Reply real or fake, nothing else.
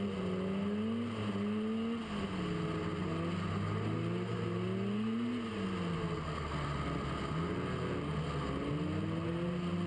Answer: real